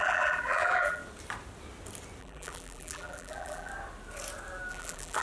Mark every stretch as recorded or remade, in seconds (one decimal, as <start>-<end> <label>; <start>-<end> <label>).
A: 0.0-1.0 remade; 1.0-2.2 recorded; 2.2-3.7 remade; 3.7-4.7 recorded; 4.7-5.2 remade